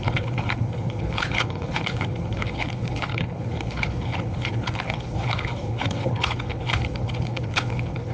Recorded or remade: remade